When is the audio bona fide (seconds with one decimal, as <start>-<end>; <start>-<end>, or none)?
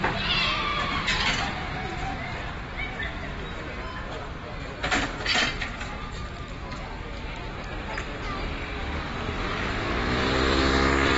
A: 0.0-8.8